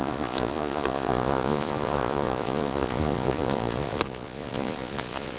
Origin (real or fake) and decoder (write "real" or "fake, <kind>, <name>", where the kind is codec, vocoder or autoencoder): fake, vocoder, Vocos